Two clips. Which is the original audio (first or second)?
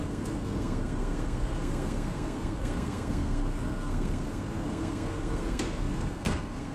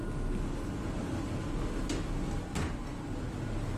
second